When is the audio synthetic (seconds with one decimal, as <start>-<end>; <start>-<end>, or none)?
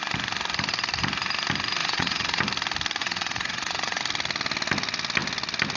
1.8-2.4; 3.0-4.0